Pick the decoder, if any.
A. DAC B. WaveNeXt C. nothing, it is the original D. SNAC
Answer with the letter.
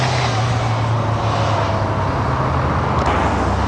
C